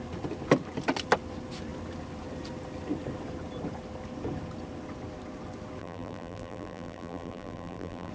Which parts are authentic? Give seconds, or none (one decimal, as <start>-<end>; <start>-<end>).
0.0-5.8